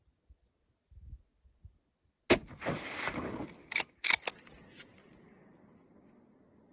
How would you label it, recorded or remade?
recorded